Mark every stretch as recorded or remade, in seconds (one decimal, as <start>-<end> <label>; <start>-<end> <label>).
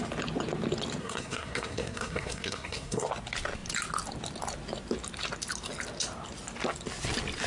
0.0-1.0 recorded; 1.0-3.1 remade; 3.1-7.5 recorded